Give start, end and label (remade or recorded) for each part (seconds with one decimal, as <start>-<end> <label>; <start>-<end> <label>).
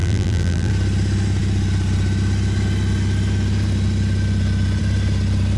0.0-0.7 remade; 0.7-5.6 recorded